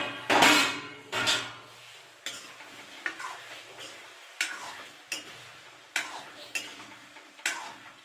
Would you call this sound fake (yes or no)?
no